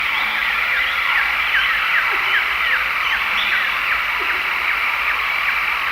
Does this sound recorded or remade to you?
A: remade